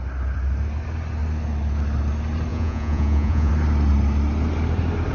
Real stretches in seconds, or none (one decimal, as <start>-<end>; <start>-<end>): 0.0-2.5; 3.5-5.1

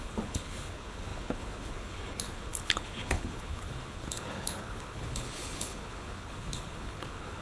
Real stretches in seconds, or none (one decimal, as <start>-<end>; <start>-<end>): none

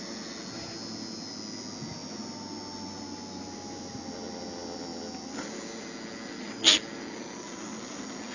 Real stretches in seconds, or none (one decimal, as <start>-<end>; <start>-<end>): 0.0-8.3

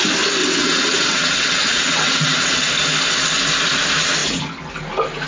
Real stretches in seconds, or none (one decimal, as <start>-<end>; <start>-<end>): 0.0-0.4; 2.7-5.3

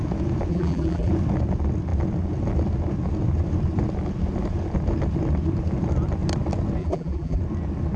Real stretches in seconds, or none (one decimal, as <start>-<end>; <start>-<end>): 0.0-0.5; 1.1-6.8; 7.4-8.0

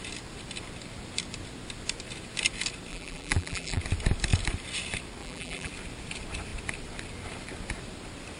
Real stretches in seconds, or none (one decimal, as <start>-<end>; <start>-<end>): 0.0-2.9; 3.8-5.2; 5.7-8.4

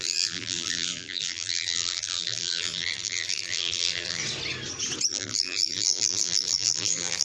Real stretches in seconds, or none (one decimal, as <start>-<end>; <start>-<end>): 4.2-5.1

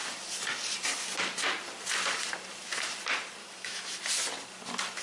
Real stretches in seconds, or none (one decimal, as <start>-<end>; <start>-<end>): 0.0-3.4; 4.0-5.0